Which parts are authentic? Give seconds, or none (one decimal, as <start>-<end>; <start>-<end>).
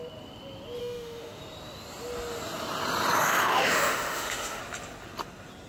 0.0-0.8; 1.4-3.2; 4.6-5.7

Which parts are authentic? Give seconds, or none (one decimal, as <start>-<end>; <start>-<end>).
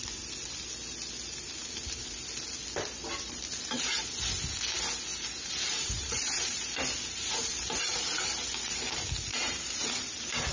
0.0-5.1; 6.7-9.3; 9.9-10.5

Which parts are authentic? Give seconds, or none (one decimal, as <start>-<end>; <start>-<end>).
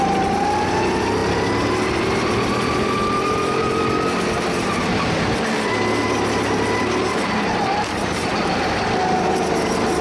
0.0-10.0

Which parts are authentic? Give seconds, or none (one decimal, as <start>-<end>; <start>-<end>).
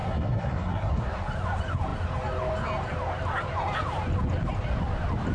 1.1-5.3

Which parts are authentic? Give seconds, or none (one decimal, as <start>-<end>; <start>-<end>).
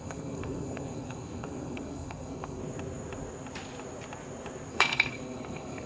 2.6-4.7